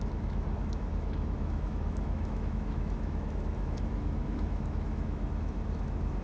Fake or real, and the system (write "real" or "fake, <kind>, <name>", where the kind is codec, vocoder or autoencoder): fake, autoencoder, DAC-VAE